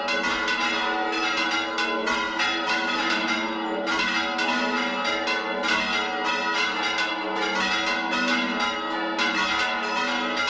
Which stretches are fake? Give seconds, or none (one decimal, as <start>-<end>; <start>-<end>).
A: 2.0-4.0